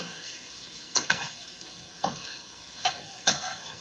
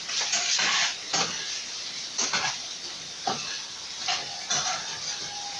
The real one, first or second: second